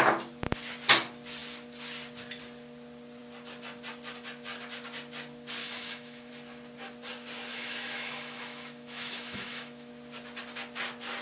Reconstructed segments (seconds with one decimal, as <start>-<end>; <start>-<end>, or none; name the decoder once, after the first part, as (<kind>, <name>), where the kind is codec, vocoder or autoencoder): 5.6-6.3 (autoencoder, DAC-VAE); 7.5-9.9